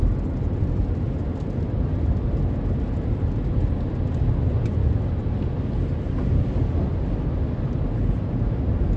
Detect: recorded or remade recorded